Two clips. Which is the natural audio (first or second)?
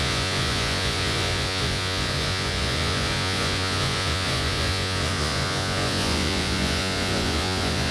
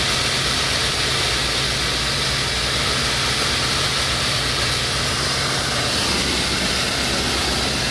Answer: second